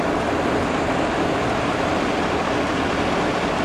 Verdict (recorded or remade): recorded